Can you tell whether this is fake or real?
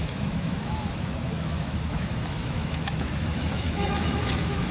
fake